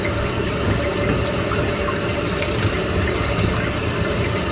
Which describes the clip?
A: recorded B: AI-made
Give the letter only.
A